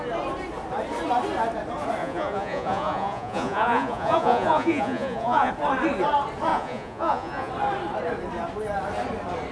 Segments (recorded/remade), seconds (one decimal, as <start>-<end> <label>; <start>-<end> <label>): 0.0-2.0 recorded; 2.0-5.5 remade; 5.5-6.5 recorded; 6.5-7.5 remade; 7.5-9.5 recorded